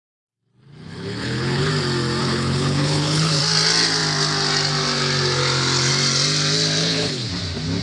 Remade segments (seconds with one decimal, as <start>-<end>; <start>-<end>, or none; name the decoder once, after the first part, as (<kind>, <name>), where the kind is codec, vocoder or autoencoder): 0.5-1.7 (codec, HILCodec); 2.2-3.4; 6.8-7.3